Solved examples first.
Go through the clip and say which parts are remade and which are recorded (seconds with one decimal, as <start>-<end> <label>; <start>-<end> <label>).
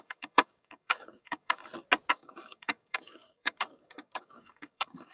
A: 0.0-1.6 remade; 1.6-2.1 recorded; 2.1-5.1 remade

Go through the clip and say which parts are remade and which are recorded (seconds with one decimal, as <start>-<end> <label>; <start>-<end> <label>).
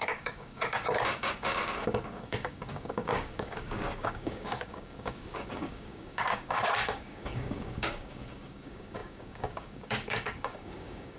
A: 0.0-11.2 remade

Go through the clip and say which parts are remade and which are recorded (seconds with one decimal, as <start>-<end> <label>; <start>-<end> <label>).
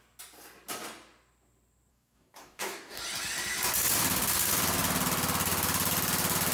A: 0.0-1.9 recorded; 1.9-3.0 remade; 3.0-6.5 recorded